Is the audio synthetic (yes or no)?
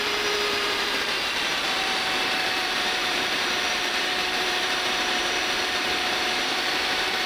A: yes